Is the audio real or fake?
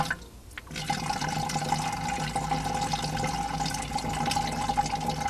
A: real